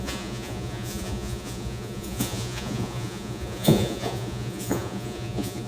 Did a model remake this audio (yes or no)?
yes